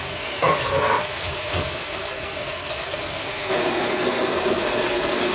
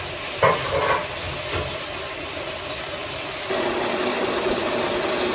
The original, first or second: second